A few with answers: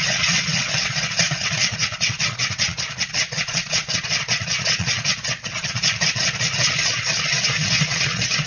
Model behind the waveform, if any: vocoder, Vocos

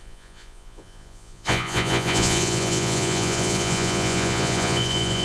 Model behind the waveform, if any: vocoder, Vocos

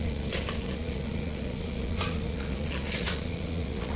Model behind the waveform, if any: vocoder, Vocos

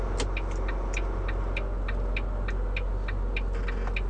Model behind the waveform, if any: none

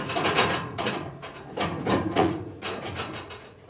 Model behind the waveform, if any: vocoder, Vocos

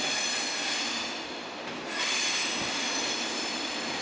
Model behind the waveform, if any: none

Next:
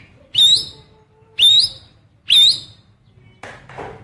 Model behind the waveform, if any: none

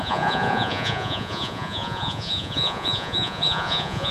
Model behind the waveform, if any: vocoder, Vocos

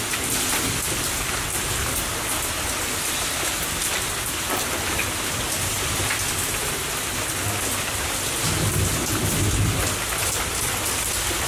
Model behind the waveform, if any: none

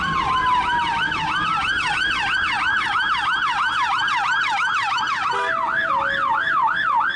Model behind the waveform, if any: none